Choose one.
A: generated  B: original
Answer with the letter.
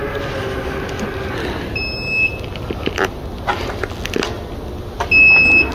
B